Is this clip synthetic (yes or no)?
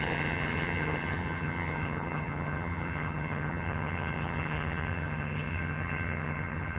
yes